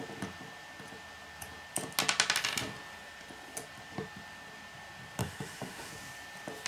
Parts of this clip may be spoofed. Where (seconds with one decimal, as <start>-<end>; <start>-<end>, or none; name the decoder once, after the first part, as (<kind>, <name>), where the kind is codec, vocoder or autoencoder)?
5.2-5.9 (autoencoder, DAC-VAE)